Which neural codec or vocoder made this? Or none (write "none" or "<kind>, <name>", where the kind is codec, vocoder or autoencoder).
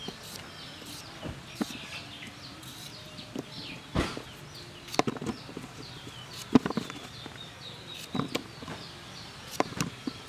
none